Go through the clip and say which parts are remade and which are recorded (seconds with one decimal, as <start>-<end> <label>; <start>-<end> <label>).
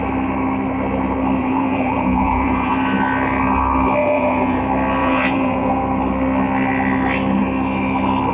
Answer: 0.0-1.4 recorded; 1.4-2.7 remade; 2.7-4.0 recorded; 4.0-4.6 remade; 4.6-5.0 recorded; 5.0-5.7 remade; 5.7-8.3 recorded